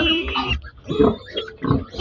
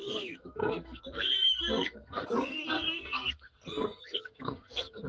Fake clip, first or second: second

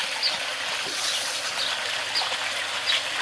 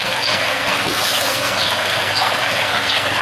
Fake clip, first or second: second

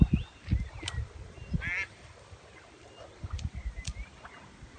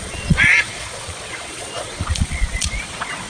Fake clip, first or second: second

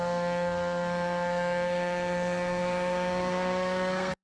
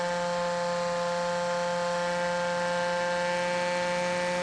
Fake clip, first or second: first